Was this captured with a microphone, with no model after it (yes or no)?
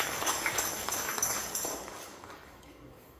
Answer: no